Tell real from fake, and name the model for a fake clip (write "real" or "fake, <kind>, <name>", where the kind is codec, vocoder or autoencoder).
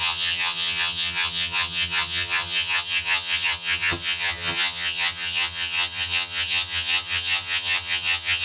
fake, vocoder, HiFi-GAN